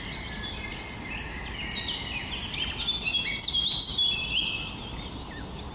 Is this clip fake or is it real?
real